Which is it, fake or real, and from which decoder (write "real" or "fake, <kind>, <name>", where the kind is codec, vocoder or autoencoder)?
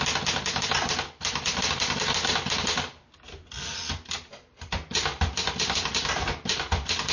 real